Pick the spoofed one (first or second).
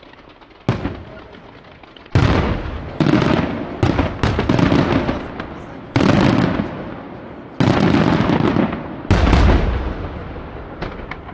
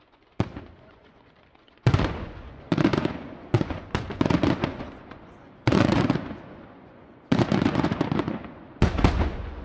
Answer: second